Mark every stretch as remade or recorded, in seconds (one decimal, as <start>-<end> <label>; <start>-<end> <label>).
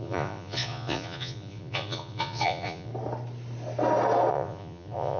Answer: 0.0-2.9 remade; 2.9-4.3 recorded; 4.3-5.2 remade